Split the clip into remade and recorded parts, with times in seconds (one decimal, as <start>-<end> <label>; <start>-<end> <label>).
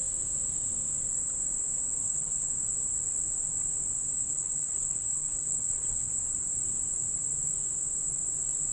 0.0-2.0 recorded; 2.0-2.5 remade; 2.5-4.1 recorded; 4.1-6.1 remade; 6.1-8.7 recorded